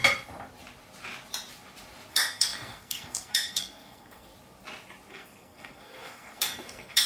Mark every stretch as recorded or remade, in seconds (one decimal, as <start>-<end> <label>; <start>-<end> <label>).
0.0-2.1 recorded; 2.1-4.3 remade; 4.3-5.1 recorded; 5.1-7.1 remade